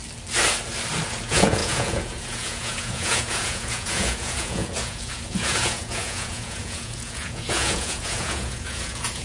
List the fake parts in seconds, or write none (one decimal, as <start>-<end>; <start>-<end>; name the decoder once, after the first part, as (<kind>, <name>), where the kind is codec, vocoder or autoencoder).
1.2-9.2 (vocoder, Vocos)